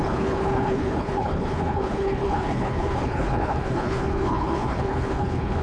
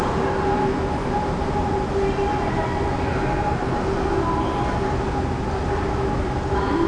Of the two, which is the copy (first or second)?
first